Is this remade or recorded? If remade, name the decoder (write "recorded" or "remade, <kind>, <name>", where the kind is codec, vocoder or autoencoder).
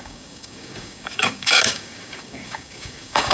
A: remade, codec, DAC